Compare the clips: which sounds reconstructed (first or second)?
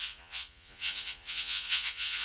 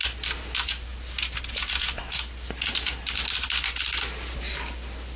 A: first